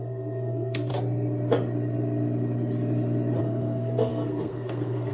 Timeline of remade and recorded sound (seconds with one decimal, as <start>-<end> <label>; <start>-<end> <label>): 0.0-0.9 remade; 0.9-3.4 recorded; 3.4-5.1 remade